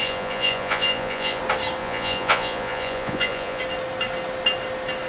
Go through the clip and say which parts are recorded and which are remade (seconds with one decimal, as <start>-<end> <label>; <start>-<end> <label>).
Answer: 0.0-1.4 remade; 1.4-1.8 recorded; 1.8-3.6 remade; 3.6-5.1 recorded